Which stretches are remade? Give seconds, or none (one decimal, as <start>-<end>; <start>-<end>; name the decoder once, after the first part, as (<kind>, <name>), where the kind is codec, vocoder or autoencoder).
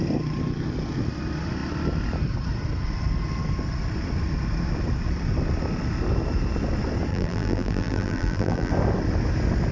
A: 7.1-8.7 (vocoder, BigVGAN v2)